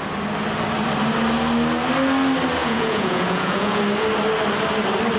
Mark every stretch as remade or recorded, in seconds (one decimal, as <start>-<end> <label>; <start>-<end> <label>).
0.0-2.6 recorded; 2.6-3.8 remade; 3.8-5.2 recorded